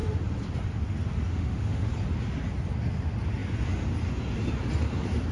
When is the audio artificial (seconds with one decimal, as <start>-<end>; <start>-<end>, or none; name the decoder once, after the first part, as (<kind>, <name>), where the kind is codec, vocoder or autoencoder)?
1.3-1.9 (autoencoder, DAC-VAE)